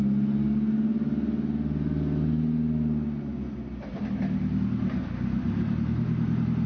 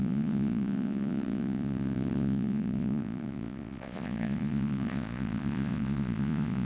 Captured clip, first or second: first